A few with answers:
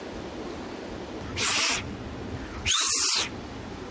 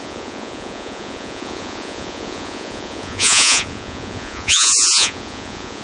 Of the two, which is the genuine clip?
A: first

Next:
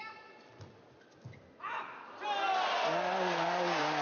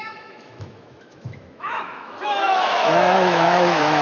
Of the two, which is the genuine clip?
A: first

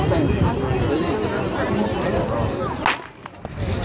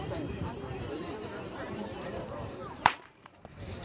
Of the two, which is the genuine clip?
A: first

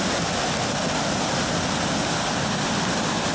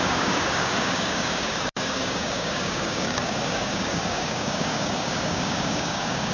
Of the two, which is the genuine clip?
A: first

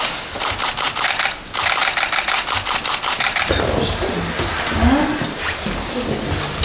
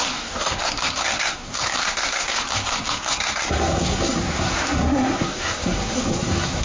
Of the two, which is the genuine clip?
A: first